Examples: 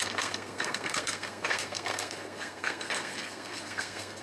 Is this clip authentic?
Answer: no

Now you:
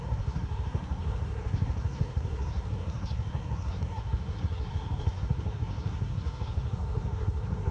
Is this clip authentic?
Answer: no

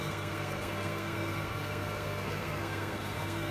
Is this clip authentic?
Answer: no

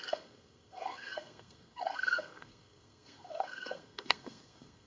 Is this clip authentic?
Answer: no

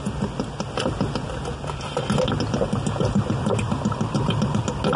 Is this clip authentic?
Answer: yes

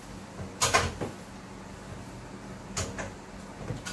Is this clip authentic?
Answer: yes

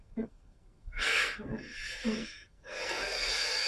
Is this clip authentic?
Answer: no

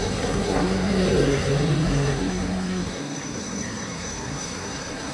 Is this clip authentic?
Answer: no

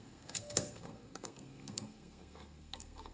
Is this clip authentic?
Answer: no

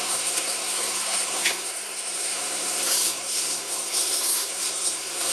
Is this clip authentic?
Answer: no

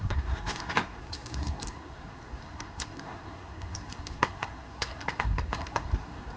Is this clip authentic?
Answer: no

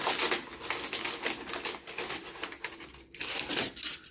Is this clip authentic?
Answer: yes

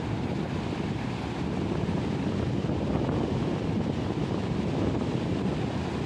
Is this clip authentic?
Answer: yes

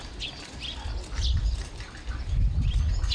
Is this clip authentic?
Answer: yes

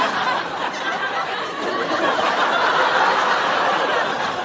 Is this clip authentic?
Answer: yes